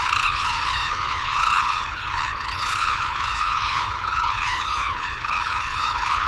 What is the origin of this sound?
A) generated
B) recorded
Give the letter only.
A